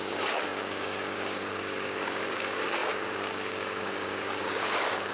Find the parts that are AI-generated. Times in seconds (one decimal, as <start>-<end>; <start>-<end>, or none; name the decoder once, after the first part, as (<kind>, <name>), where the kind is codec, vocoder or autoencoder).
0.0-5.1 (codec, DAC)